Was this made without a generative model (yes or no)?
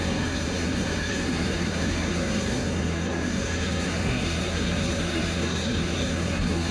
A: no